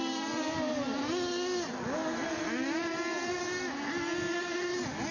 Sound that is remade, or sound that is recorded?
recorded